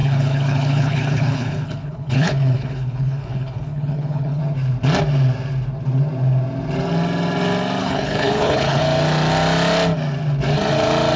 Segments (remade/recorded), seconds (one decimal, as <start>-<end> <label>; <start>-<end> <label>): 0.0-4.4 remade; 4.4-7.8 recorded; 7.8-8.8 remade; 8.8-11.2 recorded